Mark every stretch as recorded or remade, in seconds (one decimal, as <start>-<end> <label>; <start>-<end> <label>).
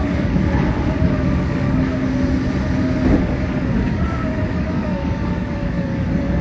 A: 0.0-1.9 remade; 1.9-3.2 recorded; 3.2-6.4 remade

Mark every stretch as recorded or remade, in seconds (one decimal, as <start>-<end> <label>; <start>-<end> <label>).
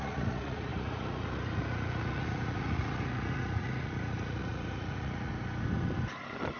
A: 0.0-5.3 remade; 5.3-6.6 recorded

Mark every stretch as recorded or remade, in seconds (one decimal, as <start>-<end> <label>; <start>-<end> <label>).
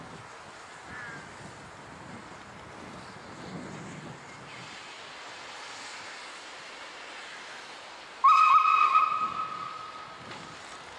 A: 0.0-11.0 recorded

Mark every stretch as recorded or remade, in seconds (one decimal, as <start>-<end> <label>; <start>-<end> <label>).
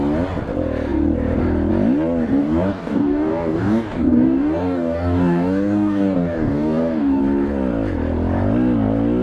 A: 0.0-2.4 recorded; 2.4-7.2 remade; 7.2-9.2 recorded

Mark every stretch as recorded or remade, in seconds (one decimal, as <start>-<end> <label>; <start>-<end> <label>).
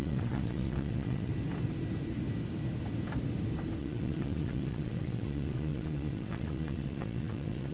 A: 0.0-1.3 remade; 1.3-3.8 recorded; 3.8-7.7 remade